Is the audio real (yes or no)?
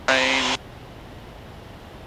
yes